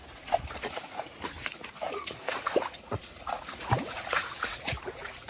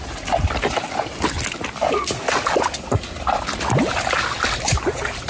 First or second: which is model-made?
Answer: first